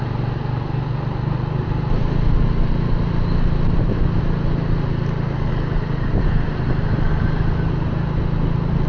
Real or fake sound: real